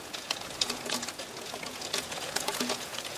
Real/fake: fake